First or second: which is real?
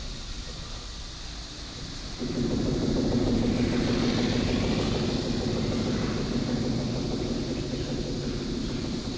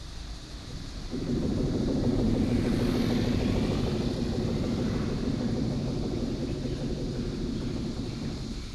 first